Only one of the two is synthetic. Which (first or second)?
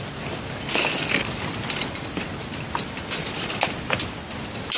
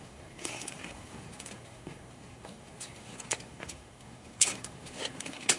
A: second